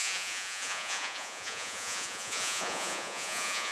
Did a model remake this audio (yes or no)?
yes